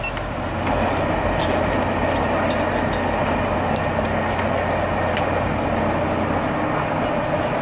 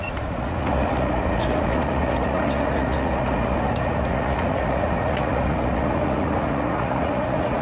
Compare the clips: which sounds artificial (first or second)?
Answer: second